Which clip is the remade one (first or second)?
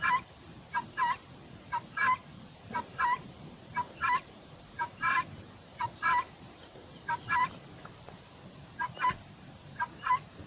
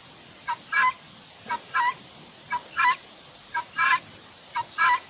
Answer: first